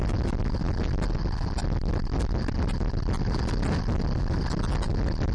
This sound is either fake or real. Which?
real